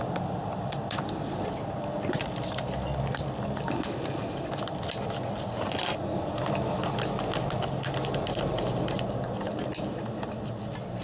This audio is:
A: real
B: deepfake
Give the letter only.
A